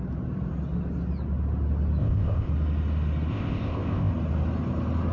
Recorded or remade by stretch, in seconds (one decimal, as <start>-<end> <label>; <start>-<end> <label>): 0.0-2.0 recorded; 2.0-2.5 remade; 2.5-3.3 recorded; 3.3-4.1 remade; 4.1-5.1 recorded